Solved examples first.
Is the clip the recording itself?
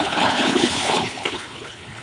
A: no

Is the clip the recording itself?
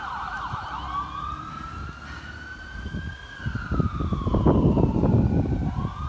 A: yes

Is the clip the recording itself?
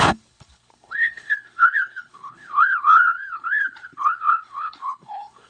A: no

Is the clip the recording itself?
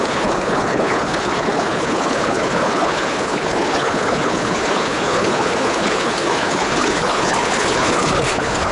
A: no